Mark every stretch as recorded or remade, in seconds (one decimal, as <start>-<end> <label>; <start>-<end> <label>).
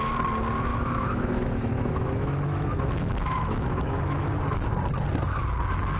0.0-0.7 recorded; 0.7-4.3 remade; 4.3-6.0 recorded